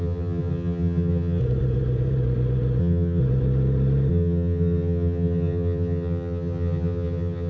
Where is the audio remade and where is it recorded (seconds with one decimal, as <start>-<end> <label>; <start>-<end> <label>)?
0.0-1.4 remade; 1.4-2.8 recorded; 2.8-3.2 remade; 3.2-4.1 recorded; 4.1-7.5 remade